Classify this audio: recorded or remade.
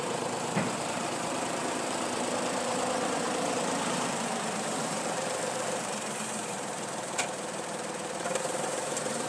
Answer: remade